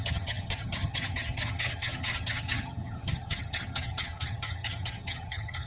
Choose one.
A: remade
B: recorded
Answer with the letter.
A